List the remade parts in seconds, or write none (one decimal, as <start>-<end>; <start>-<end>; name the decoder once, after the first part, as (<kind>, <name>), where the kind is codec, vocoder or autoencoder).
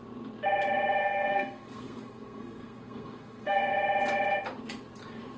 1.0-3.7 (codec, SNAC)